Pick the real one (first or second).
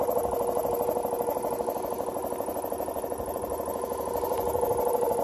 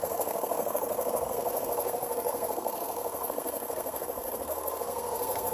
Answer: first